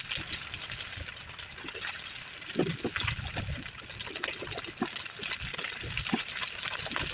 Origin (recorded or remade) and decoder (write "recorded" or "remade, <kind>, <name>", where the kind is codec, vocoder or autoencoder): recorded